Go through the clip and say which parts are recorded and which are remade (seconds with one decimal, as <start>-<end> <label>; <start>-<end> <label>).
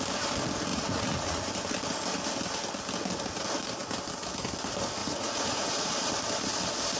0.0-0.7 recorded; 0.7-1.5 remade; 1.5-5.0 recorded; 5.0-5.9 remade; 5.9-7.0 recorded